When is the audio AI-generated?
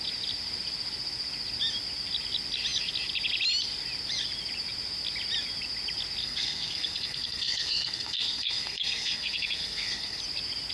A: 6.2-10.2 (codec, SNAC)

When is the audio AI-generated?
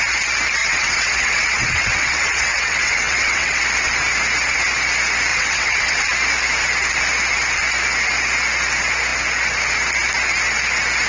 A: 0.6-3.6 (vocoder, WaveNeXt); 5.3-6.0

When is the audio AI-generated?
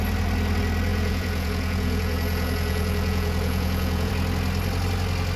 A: 0.9-4.1 (vocoder, Vocos)